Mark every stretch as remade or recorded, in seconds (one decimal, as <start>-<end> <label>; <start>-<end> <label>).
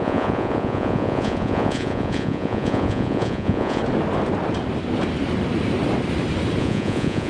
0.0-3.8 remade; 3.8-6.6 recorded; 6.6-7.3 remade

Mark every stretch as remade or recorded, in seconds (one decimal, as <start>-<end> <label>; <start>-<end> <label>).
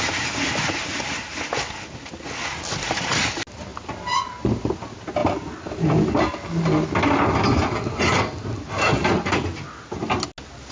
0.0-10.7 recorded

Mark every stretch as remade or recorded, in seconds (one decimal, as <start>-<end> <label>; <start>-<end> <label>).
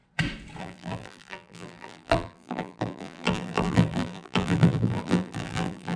0.0-0.6 recorded; 0.6-6.0 remade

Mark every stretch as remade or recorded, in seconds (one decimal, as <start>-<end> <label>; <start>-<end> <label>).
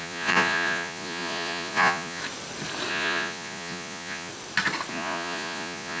0.0-2.2 remade; 2.2-2.9 recorded; 2.9-4.3 remade; 4.3-4.9 recorded; 4.9-6.0 remade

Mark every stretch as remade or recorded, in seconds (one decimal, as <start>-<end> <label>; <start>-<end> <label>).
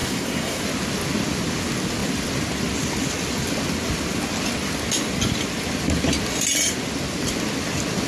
0.0-0.6 remade; 0.6-8.1 recorded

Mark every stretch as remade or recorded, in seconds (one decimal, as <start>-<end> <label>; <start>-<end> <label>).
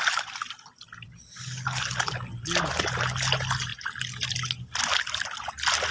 0.0-5.9 recorded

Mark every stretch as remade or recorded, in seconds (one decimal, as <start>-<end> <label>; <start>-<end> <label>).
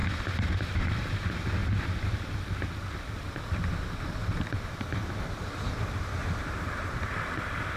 0.0-1.1 remade; 1.1-4.2 recorded; 4.2-5.0 remade; 5.0-6.2 recorded; 6.2-7.3 remade; 7.3-7.8 recorded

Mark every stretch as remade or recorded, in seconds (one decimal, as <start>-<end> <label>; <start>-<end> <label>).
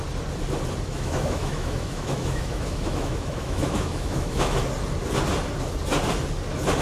0.0-0.9 recorded; 0.9-4.6 remade; 4.6-6.8 recorded